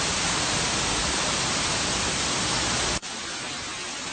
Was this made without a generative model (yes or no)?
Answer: yes